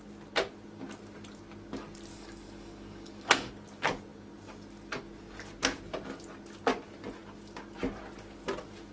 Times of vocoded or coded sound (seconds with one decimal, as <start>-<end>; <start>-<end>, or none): 2.1-3.5